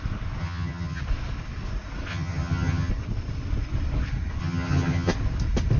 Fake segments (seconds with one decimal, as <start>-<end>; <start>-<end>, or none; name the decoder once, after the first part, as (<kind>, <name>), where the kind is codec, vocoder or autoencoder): 0.4-1.0 (vocoder, HiFi-GAN); 2.1-2.9; 4.4-5.1